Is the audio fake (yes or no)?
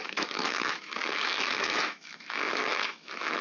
yes